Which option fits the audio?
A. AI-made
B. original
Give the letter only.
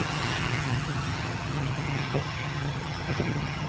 A